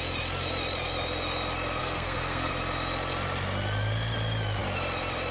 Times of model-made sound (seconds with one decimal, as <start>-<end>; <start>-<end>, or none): 1.8-2.5